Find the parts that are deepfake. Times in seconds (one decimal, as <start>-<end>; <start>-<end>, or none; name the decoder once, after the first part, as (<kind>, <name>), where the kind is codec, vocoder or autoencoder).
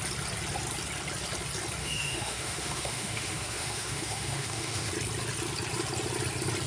1.8-4.9 (autoencoder, DAC-VAE)